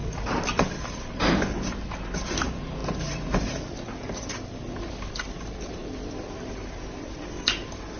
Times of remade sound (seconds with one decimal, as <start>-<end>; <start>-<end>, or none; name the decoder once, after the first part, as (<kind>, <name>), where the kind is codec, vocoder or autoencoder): 0.0-0.9 (vocoder, BigVGAN v2)